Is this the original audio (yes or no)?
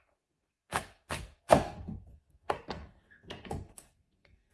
no